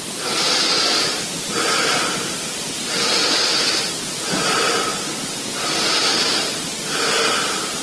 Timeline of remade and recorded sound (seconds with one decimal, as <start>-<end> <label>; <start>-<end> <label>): 0.0-7.8 recorded